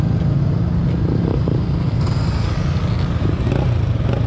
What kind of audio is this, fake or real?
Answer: real